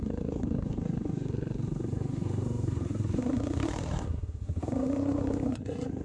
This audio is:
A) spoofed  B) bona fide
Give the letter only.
A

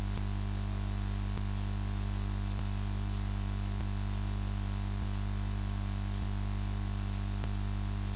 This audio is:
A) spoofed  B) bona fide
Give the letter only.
B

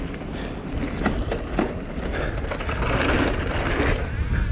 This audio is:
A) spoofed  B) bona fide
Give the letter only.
B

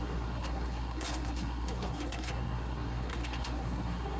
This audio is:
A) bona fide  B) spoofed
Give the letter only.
B